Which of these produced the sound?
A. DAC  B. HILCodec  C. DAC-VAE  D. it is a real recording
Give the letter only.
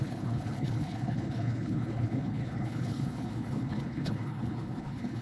B